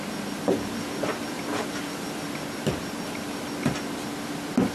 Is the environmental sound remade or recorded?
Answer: recorded